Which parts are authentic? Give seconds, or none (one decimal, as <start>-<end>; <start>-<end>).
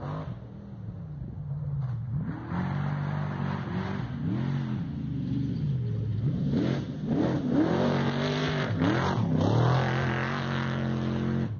0.0-6.1; 8.8-11.6